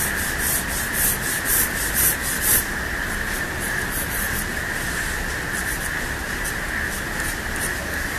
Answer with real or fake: real